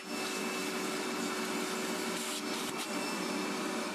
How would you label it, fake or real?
real